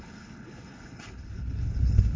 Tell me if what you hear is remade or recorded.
remade